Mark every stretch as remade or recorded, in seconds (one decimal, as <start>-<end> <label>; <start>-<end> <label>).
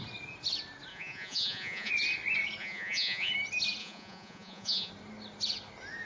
0.0-0.9 recorded; 0.9-1.9 remade; 1.9-2.6 recorded; 2.6-3.3 remade; 3.3-3.8 recorded; 3.8-4.9 remade; 4.9-6.1 recorded